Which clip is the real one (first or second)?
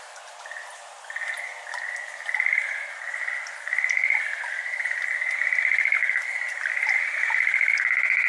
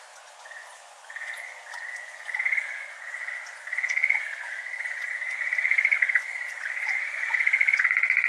first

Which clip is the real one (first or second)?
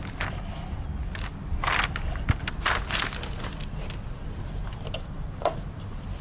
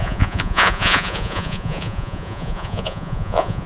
first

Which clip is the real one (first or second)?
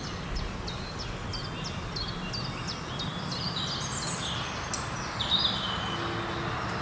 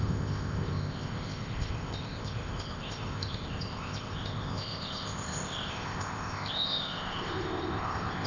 first